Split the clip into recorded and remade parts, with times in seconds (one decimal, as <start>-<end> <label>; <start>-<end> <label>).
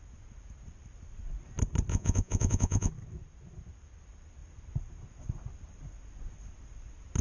0.0-1.9 recorded; 1.9-2.9 remade; 2.9-7.2 recorded